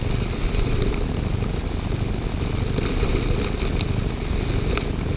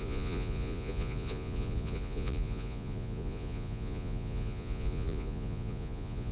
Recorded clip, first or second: first